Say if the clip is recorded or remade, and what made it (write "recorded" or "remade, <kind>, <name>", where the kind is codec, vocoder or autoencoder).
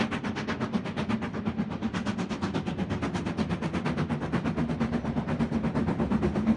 recorded